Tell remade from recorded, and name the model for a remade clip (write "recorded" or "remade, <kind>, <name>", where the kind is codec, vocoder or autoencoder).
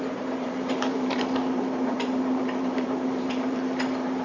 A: remade, vocoder, BigVGAN v2